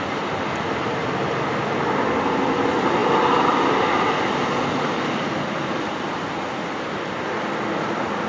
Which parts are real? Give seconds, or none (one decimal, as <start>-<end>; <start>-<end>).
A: 0.0-8.3